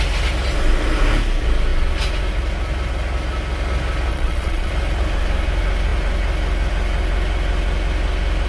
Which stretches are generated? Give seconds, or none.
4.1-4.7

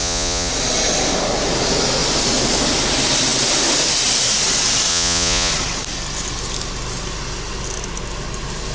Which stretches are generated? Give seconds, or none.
0.0-0.5; 4.9-5.5

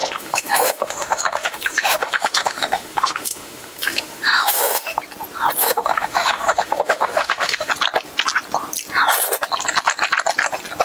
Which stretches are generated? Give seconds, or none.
0.0-5.0; 5.6-7.7

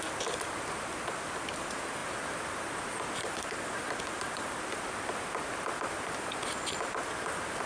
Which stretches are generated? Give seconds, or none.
none

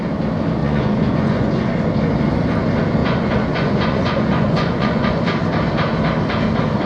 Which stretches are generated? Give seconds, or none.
0.6-1.7; 3.0-5.2